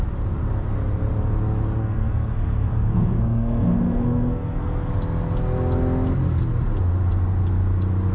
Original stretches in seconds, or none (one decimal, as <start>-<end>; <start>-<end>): 0.0-1.8; 4.9-8.1